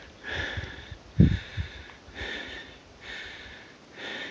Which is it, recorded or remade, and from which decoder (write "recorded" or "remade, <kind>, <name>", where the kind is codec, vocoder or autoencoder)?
recorded